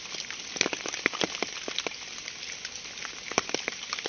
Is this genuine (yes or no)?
yes